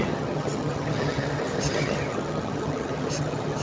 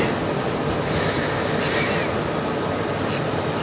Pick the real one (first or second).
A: second